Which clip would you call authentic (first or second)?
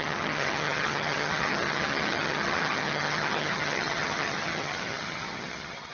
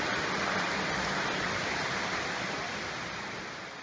second